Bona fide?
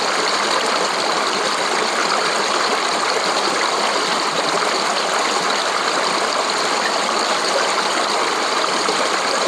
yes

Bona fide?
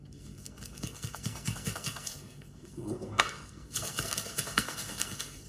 no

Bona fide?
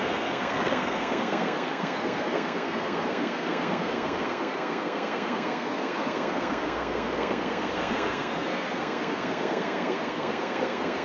no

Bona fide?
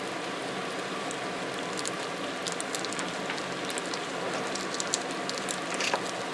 yes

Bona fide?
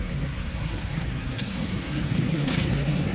no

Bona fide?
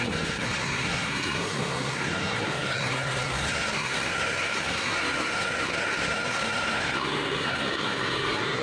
no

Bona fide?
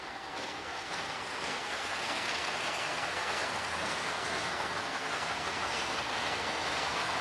no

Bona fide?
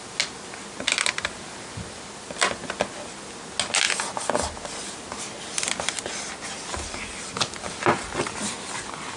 yes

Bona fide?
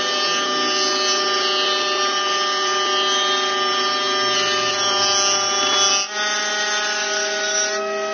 yes